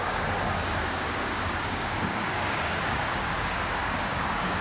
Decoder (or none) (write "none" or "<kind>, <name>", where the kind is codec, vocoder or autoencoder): codec, DAC